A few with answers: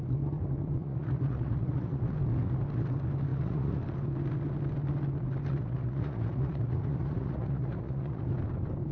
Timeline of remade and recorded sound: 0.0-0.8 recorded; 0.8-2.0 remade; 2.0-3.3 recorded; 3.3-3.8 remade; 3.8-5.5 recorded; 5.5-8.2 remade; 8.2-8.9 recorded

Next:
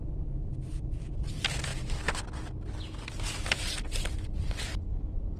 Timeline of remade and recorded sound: 0.0-5.4 recorded

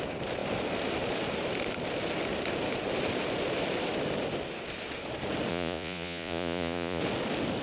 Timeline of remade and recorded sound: 0.0-5.5 recorded; 5.5-7.0 remade; 7.0-7.6 recorded

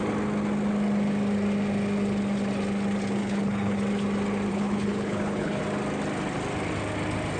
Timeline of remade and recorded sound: 0.0-3.2 recorded; 3.2-3.8 remade; 3.8-4.5 recorded; 4.5-5.6 remade; 5.6-7.4 recorded

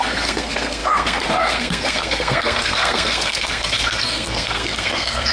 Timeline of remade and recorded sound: 0.0-5.3 remade